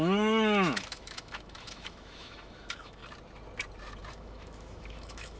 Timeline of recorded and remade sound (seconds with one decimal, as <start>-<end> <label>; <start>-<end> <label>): 0.0-3.0 remade; 3.0-4.1 recorded; 4.1-5.4 remade

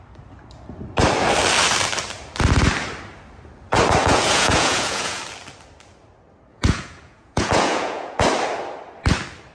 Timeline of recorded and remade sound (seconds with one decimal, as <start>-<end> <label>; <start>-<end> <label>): 0.0-4.0 recorded; 4.0-5.2 remade; 5.2-6.5 recorded; 6.5-8.2 remade; 8.2-9.5 recorded

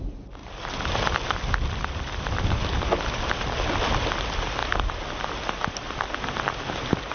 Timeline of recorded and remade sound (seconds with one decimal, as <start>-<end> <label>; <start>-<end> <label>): 0.0-7.1 remade

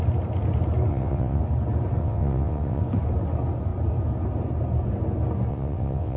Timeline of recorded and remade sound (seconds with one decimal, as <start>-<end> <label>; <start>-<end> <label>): 0.0-0.9 recorded; 0.9-1.4 remade; 1.4-2.0 recorded; 2.0-2.8 remade; 2.8-5.5 recorded; 5.5-6.2 remade

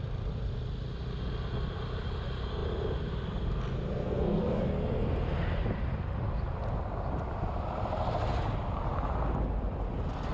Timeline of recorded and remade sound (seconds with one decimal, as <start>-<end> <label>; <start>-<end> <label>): 0.0-4.0 recorded; 4.0-4.6 remade; 4.6-10.3 recorded

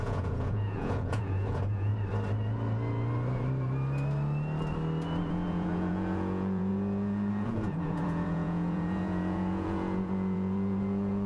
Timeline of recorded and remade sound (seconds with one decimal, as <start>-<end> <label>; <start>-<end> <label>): 0.0-1.9 remade; 1.9-5.3 recorded; 5.3-11.3 remade

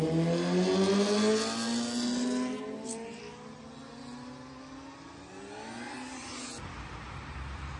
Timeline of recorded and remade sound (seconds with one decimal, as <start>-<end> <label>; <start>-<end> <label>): 0.0-7.8 recorded

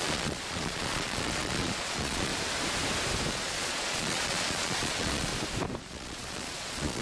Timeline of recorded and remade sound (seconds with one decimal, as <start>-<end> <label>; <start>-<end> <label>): 0.0-2.3 remade; 2.3-3.3 recorded; 3.3-5.3 remade; 5.3-5.8 recorded; 5.8-7.0 remade